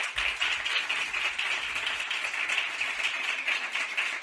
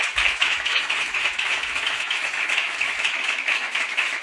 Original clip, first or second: first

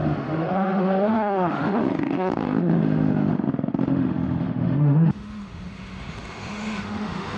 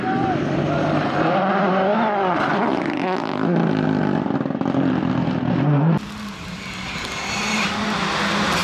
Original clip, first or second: second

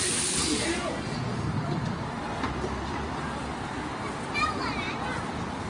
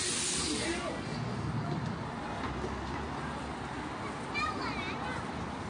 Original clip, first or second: second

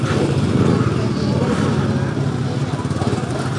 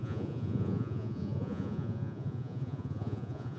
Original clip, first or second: first